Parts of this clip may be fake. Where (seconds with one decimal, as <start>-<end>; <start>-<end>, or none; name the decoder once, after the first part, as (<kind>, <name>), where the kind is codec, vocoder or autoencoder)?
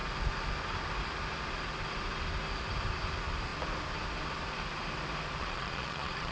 5.4-6.3 (vocoder, Vocos)